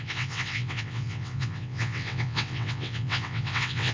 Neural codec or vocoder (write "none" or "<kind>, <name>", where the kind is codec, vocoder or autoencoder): vocoder, WaveNeXt